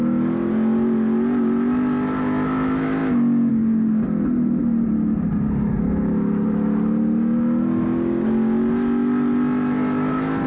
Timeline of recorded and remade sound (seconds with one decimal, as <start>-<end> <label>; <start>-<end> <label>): 0.0-10.5 recorded